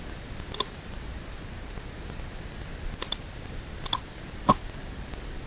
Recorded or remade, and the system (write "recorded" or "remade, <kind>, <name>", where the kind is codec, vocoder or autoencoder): remade, vocoder, BigVGAN v2